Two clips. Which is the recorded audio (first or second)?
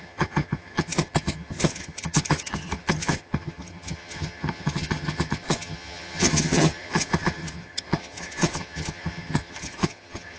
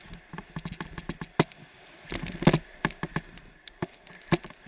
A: second